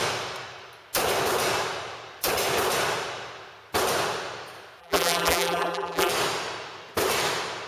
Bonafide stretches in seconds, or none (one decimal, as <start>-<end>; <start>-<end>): 0.0-4.8; 6.1-7.7